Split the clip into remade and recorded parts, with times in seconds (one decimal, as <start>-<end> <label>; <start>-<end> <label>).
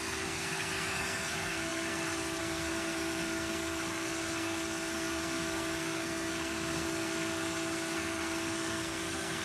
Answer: 0.0-9.4 remade